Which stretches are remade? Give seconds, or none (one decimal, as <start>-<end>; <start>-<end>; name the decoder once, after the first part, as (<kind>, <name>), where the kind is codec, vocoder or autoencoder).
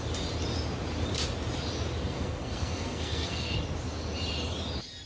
2.0-3.6 (codec, SNAC)